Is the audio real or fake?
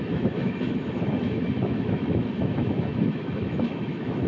fake